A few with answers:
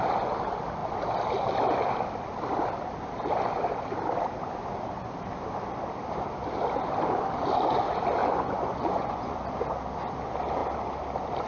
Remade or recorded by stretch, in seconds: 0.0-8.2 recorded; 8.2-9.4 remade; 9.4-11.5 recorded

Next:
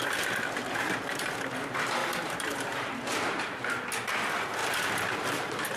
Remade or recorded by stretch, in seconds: 0.0-2.0 recorded; 2.0-3.6 remade; 3.6-4.6 recorded; 4.6-5.8 remade

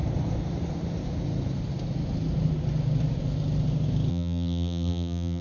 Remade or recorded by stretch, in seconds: 0.0-4.1 recorded; 4.1-5.4 remade

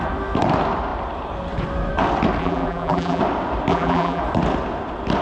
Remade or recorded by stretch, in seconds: 0.0-2.4 recorded; 2.4-3.2 remade; 3.2-3.7 recorded; 3.7-4.2 remade; 4.2-5.2 recorded

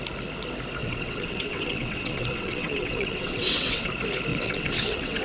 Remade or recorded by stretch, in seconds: 0.0-0.8 recorded; 0.8-3.9 remade; 3.9-4.3 recorded; 4.3-5.2 remade

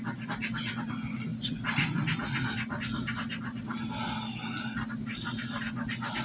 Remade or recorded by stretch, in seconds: 0.0-6.2 recorded

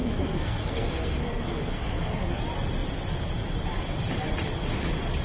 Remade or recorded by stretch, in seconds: 0.0-2.4 remade; 2.4-5.2 recorded